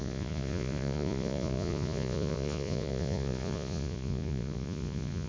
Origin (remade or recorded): remade